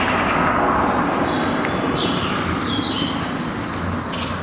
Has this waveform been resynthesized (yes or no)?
no